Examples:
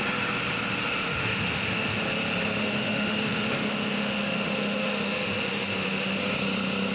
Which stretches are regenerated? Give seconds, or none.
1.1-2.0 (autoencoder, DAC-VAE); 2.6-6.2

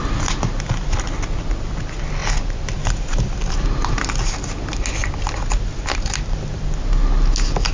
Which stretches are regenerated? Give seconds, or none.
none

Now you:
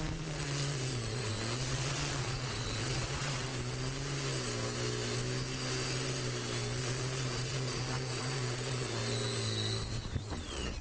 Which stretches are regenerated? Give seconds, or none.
0.0-3.5 (vocoder, Vocos); 6.8-9.0; 9.9-10.8

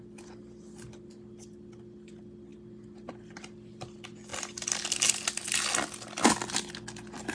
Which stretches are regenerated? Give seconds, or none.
none